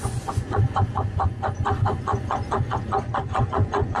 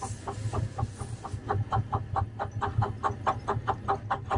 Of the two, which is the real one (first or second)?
second